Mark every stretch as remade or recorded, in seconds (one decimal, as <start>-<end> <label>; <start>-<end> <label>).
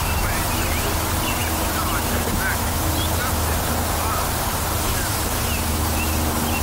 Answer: 0.0-6.6 recorded